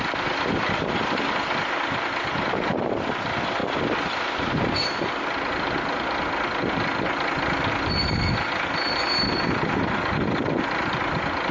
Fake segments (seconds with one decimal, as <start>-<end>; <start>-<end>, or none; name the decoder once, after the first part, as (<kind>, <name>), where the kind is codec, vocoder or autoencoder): none